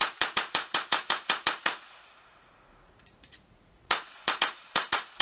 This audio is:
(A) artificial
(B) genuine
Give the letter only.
A